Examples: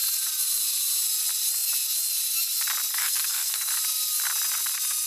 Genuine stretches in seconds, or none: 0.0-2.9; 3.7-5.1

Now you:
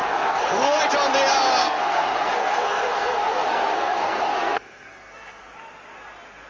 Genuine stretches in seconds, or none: 0.8-1.6; 5.5-6.5